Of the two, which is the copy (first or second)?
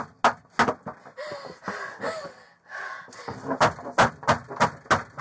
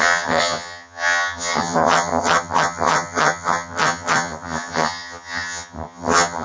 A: second